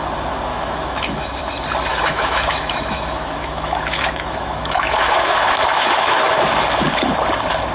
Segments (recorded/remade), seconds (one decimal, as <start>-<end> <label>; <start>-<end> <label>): 0.0-0.5 recorded; 0.5-1.4 remade; 1.4-1.9 recorded; 1.9-6.5 remade; 6.5-7.7 recorded